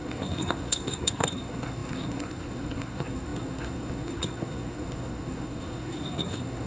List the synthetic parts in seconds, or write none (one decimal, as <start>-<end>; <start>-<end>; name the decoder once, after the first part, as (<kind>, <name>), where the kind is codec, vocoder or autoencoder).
0.0-6.7 (codec, SNAC)